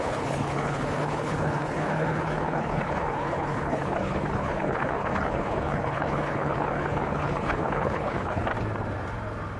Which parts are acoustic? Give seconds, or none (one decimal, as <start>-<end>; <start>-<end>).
8.5-9.6